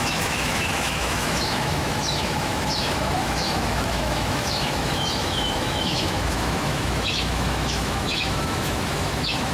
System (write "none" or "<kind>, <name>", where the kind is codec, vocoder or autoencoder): autoencoder, DAC-VAE